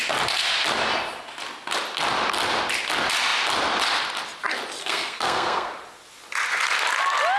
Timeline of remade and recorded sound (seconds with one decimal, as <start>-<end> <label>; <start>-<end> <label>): 0.0-4.8 recorded; 4.8-5.7 remade; 5.7-7.4 recorded